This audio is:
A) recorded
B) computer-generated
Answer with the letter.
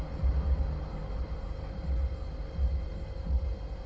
A